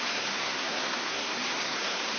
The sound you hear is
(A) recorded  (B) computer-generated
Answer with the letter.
B